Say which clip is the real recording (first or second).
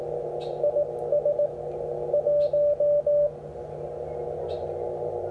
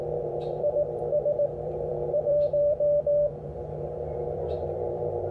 first